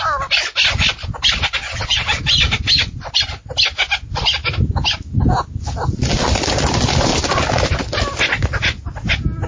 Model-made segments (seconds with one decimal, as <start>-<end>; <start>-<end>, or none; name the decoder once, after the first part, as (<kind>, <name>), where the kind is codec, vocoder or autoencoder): 1.6-2.2 (vocoder, Vocos)